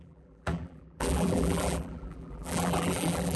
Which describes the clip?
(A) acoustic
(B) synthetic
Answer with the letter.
B